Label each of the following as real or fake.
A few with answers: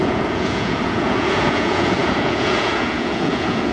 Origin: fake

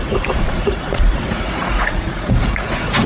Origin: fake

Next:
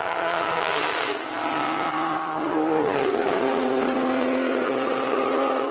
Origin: fake